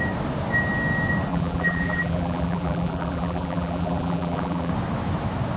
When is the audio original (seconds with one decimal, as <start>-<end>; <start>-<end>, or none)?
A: 0.0-1.3; 4.7-5.6